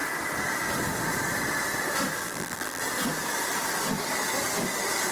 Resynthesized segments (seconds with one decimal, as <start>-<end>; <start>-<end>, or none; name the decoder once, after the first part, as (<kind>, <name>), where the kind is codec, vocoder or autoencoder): 2.2-2.8 (vocoder, BigVGAN v2)